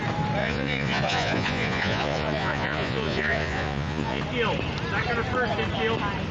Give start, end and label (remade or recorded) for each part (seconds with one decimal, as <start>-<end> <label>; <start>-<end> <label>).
0.0-0.4 recorded; 0.4-4.2 remade; 4.2-6.3 recorded